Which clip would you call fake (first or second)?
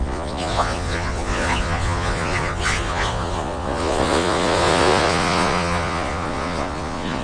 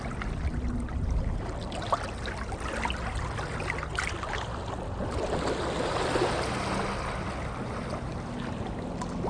first